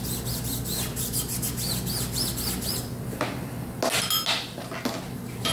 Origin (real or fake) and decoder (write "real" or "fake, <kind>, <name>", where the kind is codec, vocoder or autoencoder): real